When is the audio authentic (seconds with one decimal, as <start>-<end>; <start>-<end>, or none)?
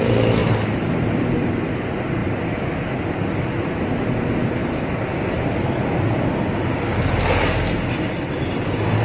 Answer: 0.0-0.4; 1.6-9.0